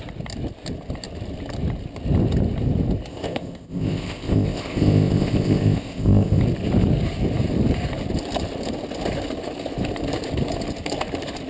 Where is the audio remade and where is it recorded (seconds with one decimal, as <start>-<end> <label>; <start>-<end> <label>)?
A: 0.0-3.1 recorded; 3.1-6.4 remade; 6.4-11.5 recorded